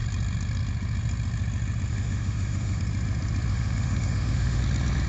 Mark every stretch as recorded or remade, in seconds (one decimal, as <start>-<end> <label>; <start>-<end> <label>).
0.0-1.9 recorded; 1.9-2.8 remade; 2.8-3.5 recorded; 3.5-4.6 remade; 4.6-5.1 recorded